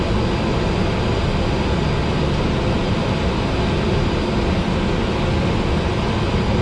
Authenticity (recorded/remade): recorded